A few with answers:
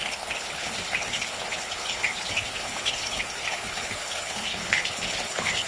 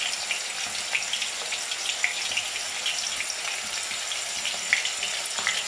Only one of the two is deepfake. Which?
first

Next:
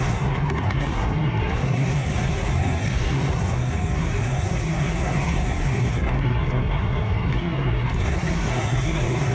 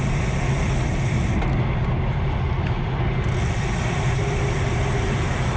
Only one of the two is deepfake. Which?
first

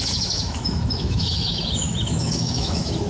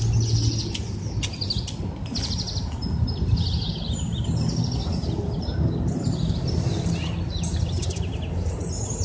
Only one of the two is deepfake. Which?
first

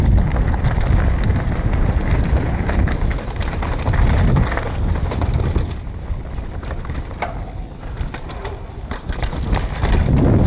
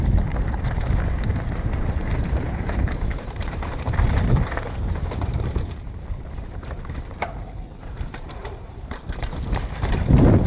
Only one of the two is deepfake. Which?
second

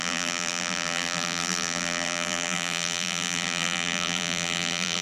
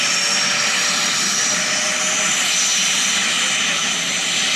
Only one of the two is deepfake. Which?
first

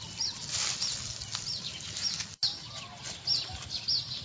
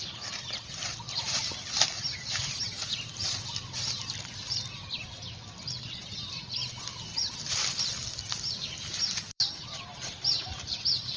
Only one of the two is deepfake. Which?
second